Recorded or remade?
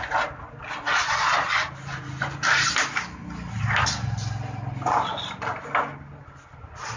recorded